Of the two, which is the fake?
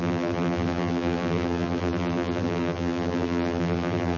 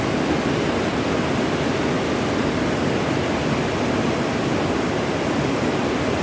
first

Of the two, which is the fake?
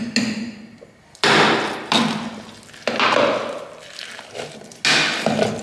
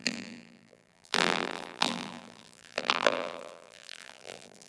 second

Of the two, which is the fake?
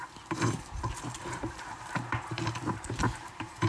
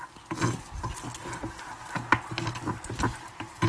first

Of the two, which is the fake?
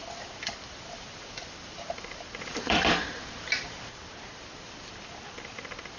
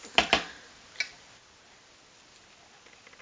first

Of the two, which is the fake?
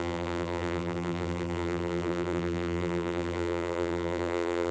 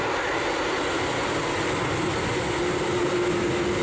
first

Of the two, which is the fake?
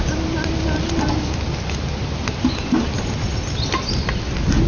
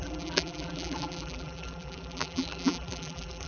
second